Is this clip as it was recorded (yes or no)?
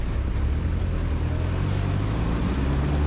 yes